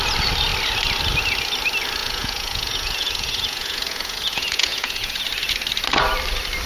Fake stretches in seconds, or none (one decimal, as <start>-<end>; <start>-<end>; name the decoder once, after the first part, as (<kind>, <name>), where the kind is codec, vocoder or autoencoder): 2.0-5.2 (vocoder, Vocos)